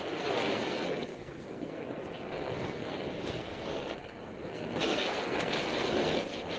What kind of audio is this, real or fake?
fake